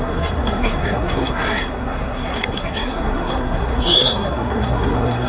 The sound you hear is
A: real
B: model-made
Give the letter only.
B